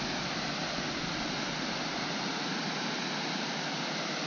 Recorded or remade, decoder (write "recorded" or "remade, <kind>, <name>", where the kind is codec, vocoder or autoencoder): recorded